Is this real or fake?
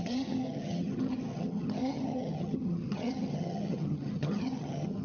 fake